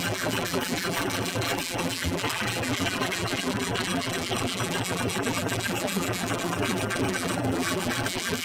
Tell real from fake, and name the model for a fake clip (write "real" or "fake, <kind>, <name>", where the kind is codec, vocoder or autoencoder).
fake, vocoder, BigVGAN v2